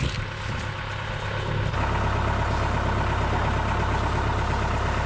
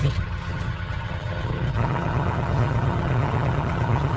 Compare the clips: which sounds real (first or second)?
first